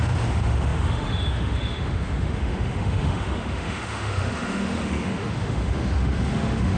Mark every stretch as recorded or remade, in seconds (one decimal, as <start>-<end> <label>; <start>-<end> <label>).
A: 0.0-6.8 remade